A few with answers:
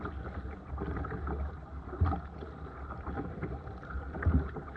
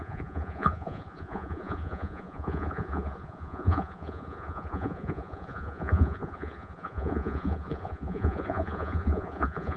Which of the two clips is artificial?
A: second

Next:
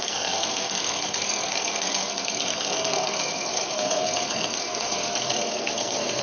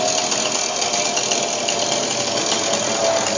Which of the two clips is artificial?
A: first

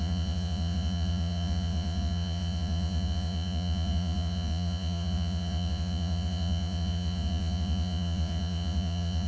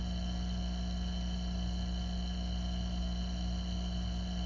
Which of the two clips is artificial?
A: first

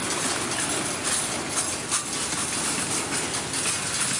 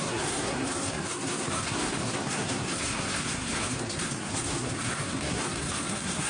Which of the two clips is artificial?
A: second